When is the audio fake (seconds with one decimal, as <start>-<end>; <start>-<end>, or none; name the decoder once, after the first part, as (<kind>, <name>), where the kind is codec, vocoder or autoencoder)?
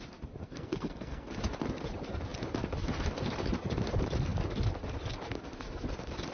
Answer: 0.4-1.3 (codec, SNAC)